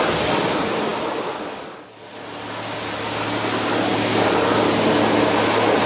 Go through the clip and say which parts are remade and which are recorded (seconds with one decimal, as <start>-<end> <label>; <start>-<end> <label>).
0.0-5.8 recorded